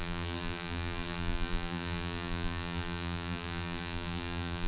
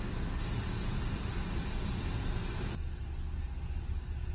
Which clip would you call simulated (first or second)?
first